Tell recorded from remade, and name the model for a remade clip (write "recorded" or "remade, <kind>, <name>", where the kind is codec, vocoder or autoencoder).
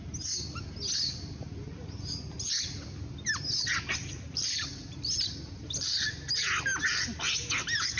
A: recorded